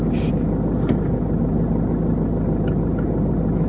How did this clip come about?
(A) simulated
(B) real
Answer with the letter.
B